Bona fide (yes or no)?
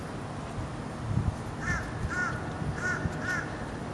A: yes